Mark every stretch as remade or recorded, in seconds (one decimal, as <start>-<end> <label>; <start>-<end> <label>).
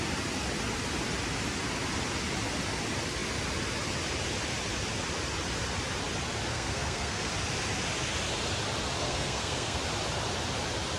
0.0-6.5 recorded; 6.5-7.3 remade; 7.3-9.0 recorded; 9.0-9.8 remade; 9.8-11.0 recorded